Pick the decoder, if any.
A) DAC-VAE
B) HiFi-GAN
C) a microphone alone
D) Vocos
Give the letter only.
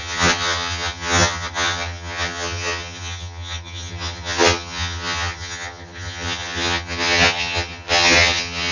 B